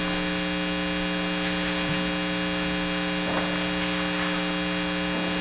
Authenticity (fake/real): real